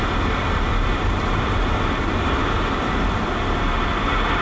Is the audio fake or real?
real